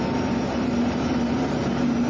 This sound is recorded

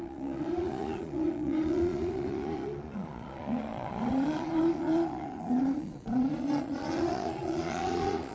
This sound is remade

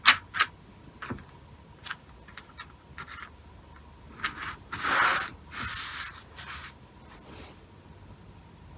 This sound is recorded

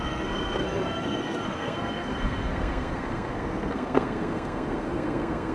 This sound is remade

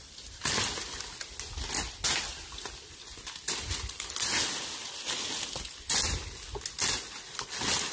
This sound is recorded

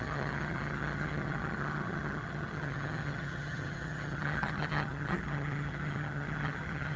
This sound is remade